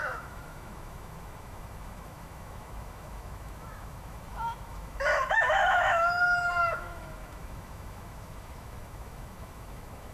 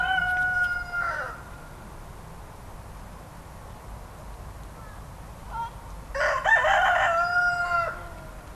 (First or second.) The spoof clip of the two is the first